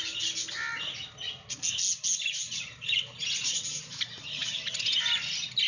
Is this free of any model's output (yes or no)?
yes